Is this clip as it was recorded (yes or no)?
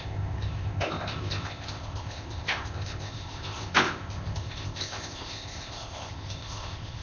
no